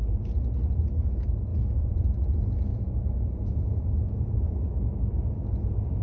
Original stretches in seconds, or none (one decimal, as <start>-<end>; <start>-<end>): 0.0-1.5; 2.0-2.7; 4.3-6.0